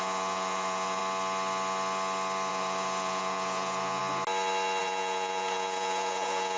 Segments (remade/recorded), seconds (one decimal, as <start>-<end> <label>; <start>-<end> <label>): 0.0-1.0 remade; 1.0-2.5 recorded; 2.5-4.0 remade; 4.0-4.8 recorded; 4.8-6.6 remade